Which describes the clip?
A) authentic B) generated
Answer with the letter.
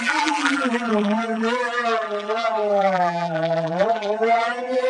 B